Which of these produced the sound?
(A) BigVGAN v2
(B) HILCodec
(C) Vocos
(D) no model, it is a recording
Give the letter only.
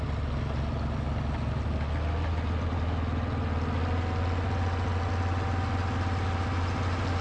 D